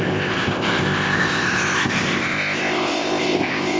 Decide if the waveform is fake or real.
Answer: fake